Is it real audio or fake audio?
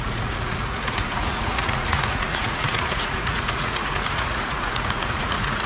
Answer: fake